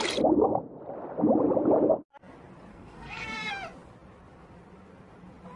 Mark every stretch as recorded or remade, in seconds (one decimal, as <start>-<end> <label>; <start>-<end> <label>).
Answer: 0.0-2.7 recorded; 2.7-3.5 remade; 3.5-5.6 recorded